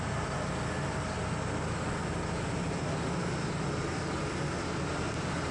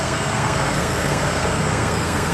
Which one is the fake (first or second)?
second